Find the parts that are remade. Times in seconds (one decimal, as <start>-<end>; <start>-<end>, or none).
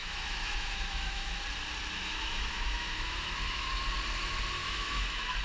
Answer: 0.0-1.4; 2.0-3.8; 4.6-5.4